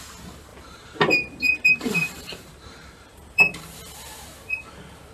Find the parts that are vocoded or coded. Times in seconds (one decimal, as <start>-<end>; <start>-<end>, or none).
0.5-3.6